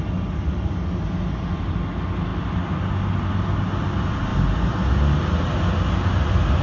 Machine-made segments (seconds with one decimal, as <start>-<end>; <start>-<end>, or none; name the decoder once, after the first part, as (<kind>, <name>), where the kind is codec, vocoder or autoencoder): none